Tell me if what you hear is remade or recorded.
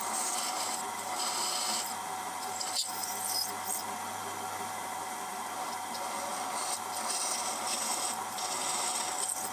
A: recorded